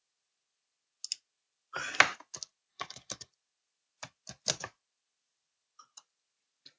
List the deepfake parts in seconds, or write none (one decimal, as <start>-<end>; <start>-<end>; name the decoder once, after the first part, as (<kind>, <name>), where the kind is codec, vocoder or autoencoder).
2.7-3.3 (codec, HILCodec)